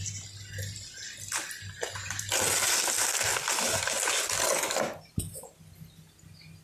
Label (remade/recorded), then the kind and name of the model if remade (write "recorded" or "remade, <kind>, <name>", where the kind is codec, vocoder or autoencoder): recorded